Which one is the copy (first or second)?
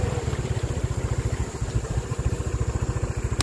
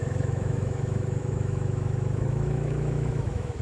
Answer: second